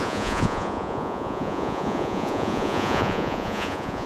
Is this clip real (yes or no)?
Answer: no